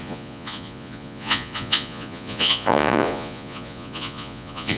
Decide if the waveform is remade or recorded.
remade